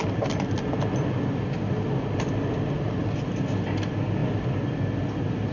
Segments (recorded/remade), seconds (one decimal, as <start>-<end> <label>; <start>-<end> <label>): 0.0-5.5 recorded